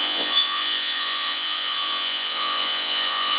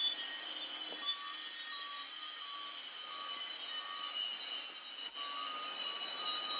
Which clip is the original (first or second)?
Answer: second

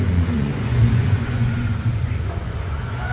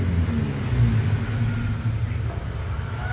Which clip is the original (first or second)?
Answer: second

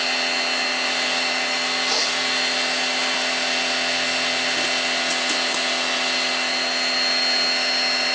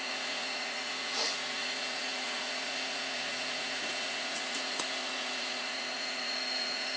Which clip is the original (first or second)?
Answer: first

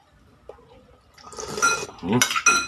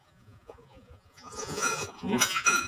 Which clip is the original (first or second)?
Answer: first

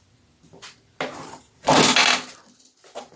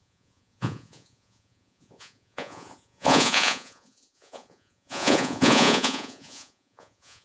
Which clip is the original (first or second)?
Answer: first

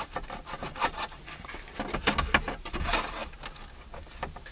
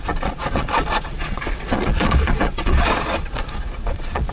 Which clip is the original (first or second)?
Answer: first